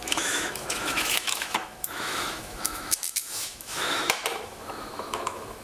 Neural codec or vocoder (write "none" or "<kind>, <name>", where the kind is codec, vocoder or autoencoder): autoencoder, DAC-VAE